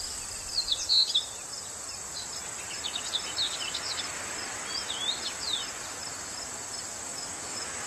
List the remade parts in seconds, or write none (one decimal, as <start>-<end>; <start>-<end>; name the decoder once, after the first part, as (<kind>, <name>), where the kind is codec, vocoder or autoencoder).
7.1-7.9 (autoencoder, DAC-VAE)